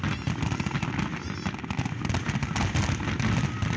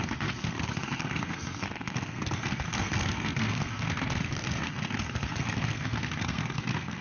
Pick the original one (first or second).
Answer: first